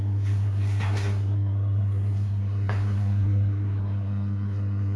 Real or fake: fake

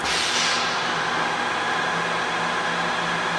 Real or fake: real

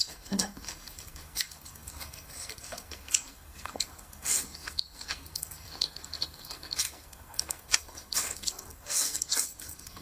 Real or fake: fake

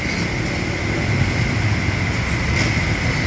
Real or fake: real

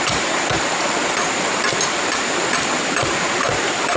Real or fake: fake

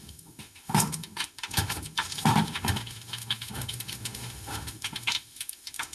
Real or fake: fake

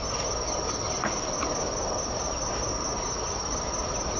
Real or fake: real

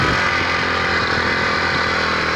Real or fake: real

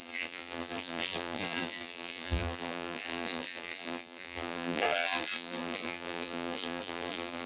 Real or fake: fake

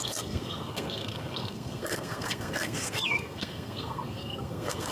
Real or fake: fake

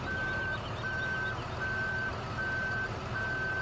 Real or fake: real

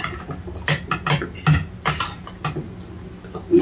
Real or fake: real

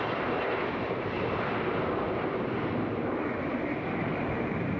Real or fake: real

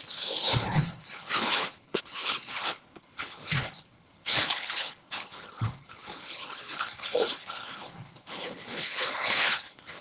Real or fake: fake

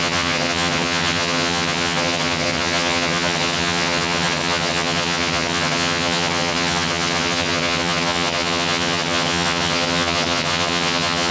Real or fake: fake